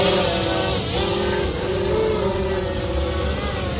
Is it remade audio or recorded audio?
recorded